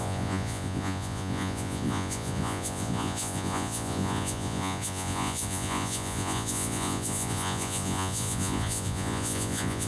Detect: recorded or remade remade